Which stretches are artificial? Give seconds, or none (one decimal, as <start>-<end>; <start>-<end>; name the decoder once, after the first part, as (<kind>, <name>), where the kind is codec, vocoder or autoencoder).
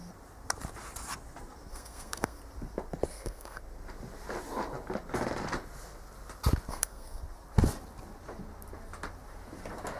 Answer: 1.7-2.4 (codec, SNAC); 3.1-3.6; 6.7-7.2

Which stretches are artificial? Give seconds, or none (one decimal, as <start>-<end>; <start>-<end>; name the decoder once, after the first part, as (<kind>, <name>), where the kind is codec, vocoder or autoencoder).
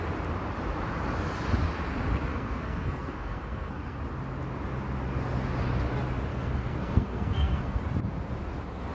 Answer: 2.3-4.0 (codec, SNAC); 6.3-7.8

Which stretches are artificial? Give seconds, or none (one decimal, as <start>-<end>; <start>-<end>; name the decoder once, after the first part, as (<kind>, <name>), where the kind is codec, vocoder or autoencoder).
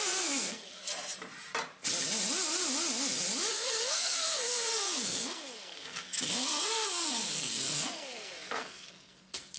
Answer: 0.0-0.9 (codec, SNAC); 3.5-9.6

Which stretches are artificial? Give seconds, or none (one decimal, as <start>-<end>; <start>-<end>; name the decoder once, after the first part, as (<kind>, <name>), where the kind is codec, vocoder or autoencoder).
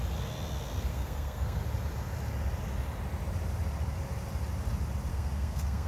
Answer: 0.9-1.6 (codec, SNAC); 5.1-5.9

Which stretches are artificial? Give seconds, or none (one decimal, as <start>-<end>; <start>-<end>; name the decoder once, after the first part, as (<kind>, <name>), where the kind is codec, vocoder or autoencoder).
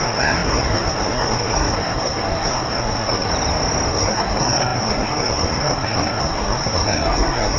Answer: 0.0-3.3 (codec, SNAC); 3.9-7.6